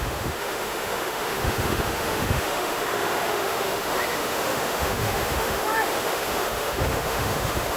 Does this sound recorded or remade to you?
remade